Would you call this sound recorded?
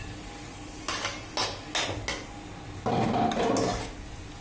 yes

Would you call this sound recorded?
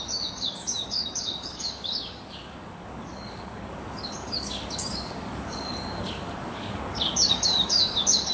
no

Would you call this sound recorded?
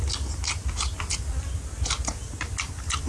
yes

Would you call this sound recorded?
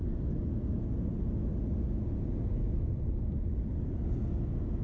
yes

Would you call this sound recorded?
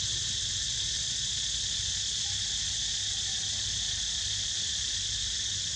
yes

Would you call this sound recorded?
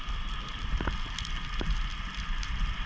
yes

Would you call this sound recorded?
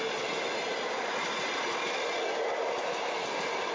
yes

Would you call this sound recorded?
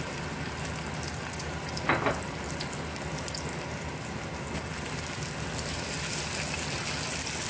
yes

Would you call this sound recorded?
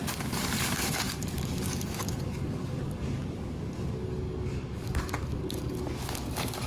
no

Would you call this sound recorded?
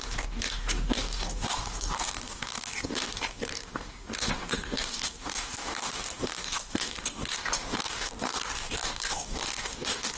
no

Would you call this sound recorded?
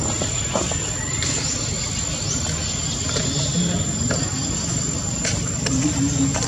yes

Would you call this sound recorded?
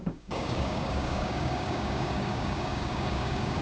no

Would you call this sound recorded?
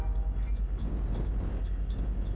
yes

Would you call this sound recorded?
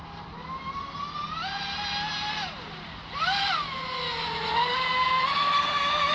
yes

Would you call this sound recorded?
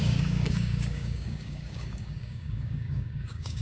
no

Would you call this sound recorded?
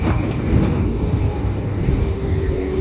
no